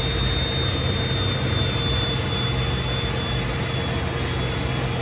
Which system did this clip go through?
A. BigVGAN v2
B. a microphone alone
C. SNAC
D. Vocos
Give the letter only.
B